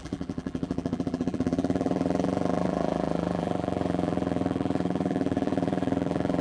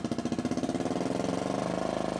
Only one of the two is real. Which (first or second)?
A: second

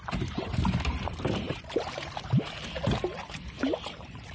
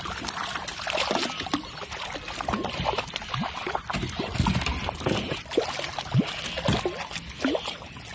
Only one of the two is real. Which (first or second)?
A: second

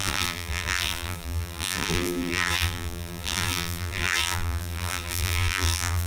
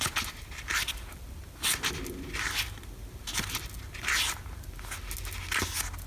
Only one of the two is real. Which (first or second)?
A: second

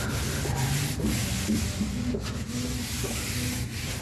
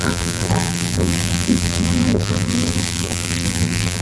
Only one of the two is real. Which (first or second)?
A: first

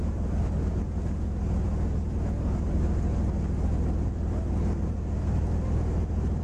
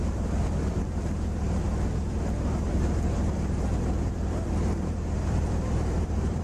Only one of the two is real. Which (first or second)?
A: first